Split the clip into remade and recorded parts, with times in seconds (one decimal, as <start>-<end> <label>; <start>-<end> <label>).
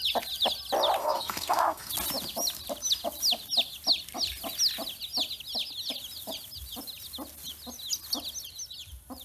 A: 0.0-1.0 recorded; 1.0-1.9 remade; 1.9-9.2 recorded